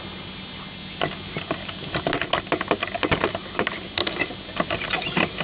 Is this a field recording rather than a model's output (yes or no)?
yes